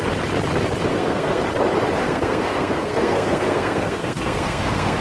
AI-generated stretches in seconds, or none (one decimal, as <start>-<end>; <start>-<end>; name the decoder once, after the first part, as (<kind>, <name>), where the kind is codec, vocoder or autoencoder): 0.9-1.4 (codec, SNAC); 2.0-5.0